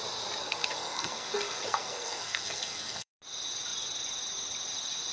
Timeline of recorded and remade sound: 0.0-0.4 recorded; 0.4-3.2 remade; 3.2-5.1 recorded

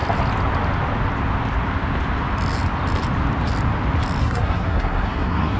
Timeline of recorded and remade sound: 0.0-4.2 recorded; 4.2-5.6 remade

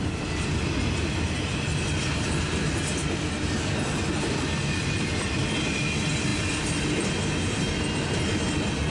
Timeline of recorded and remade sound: 0.0-8.9 recorded

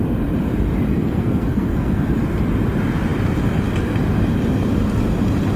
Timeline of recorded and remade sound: 0.0-0.9 recorded; 0.9-2.1 remade; 2.1-5.6 recorded

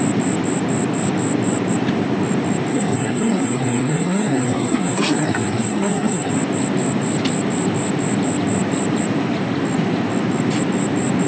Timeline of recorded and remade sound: 0.0-2.7 recorded; 2.7-6.3 remade; 6.3-11.3 recorded